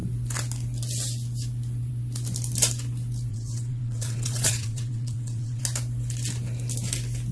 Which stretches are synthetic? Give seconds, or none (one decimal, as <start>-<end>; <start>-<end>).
3.3-5.6